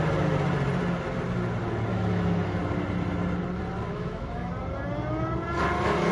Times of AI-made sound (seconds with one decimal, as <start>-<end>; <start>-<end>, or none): 1.9-2.6; 3.9-4.5